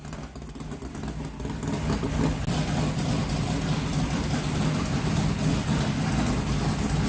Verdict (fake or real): real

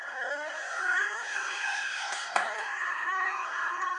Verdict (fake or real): fake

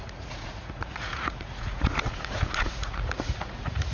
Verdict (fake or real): fake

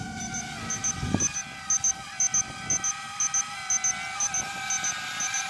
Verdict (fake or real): real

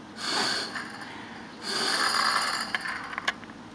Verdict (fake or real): real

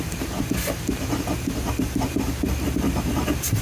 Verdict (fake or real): fake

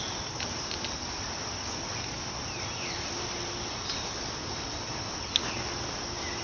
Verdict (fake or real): real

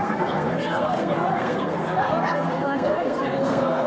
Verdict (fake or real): fake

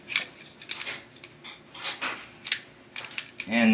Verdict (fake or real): real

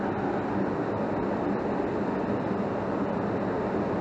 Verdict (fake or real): real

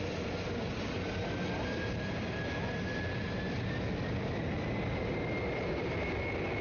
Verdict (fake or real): real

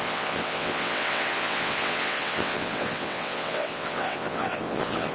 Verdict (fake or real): fake